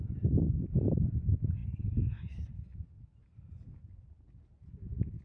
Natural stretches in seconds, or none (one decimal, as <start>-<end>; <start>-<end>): 0.0-5.2